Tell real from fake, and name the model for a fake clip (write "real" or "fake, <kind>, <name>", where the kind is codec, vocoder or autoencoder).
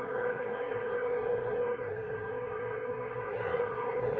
fake, codec, SNAC